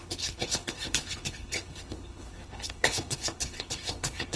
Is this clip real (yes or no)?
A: no